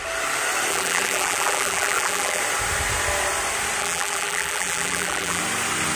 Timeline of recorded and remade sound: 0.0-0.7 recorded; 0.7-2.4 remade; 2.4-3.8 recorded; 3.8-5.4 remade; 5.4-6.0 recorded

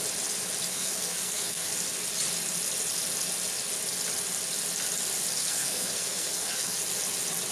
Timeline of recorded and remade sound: 0.0-0.7 recorded; 0.7-1.7 remade; 1.7-5.4 recorded; 5.4-6.8 remade; 6.8-7.5 recorded

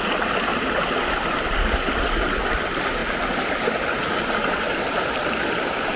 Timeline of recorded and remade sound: 0.0-6.0 recorded

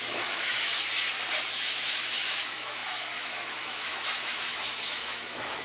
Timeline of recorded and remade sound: 0.0-0.7 remade; 0.7-1.5 recorded; 1.5-5.6 remade

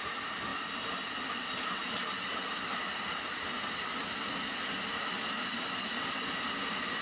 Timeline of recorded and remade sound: 0.0-7.0 recorded

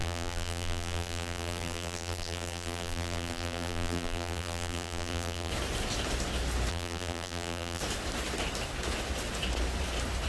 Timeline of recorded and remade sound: 0.0-5.5 remade; 5.5-6.7 recorded; 6.7-7.8 remade; 7.8-10.3 recorded

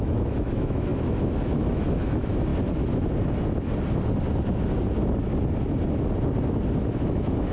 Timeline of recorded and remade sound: 0.0-2.5 remade; 2.5-6.9 recorded; 6.9-7.5 remade